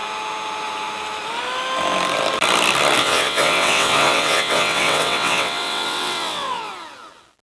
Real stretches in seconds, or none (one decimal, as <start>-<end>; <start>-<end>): 0.0-3.0; 6.7-7.4

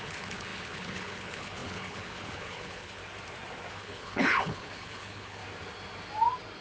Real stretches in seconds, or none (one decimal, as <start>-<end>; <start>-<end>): 3.0-3.7; 5.4-6.6

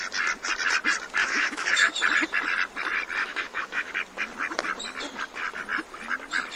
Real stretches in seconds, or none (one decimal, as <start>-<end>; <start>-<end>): 0.0-1.2; 1.9-3.2; 3.9-6.5

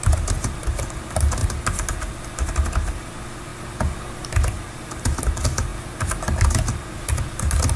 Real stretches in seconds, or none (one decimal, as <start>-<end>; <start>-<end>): 0.0-7.8